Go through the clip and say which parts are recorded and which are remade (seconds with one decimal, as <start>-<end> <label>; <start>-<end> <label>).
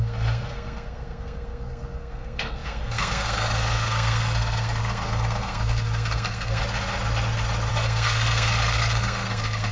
0.0-6.6 remade; 6.6-7.7 recorded; 7.7-9.7 remade